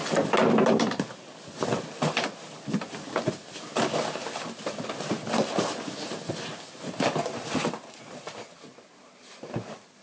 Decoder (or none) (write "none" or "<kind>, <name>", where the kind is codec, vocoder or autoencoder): none